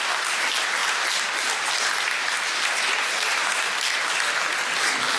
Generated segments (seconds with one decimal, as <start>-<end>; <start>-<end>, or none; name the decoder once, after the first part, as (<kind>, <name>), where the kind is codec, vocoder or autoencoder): none